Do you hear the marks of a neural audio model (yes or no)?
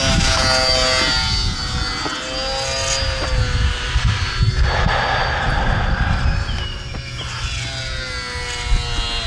no